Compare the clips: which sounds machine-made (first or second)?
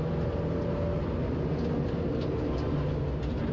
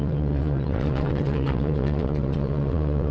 second